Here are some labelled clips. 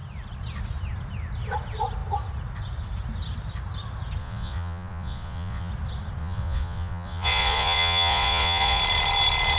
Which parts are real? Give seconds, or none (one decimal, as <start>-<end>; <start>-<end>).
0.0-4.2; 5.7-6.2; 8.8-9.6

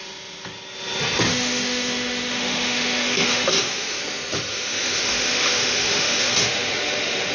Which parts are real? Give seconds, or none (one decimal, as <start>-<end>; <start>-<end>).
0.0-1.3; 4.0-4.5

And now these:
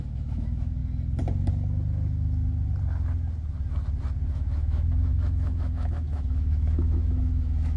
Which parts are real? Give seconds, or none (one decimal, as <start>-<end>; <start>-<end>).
0.8-4.3

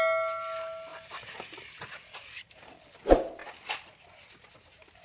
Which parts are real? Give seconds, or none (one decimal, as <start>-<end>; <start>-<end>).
0.0-0.9; 3.0-5.0

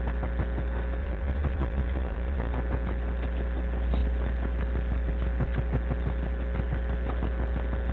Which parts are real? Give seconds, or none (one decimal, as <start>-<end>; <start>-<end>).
0.0-1.0; 2.5-7.9

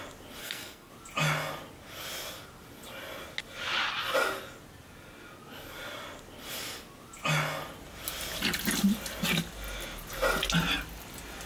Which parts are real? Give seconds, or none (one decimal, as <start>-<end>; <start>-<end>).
0.0-0.4; 0.9-11.5

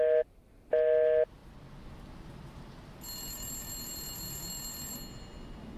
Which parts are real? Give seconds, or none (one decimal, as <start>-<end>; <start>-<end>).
0.0-5.8